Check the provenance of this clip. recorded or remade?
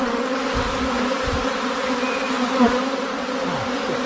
recorded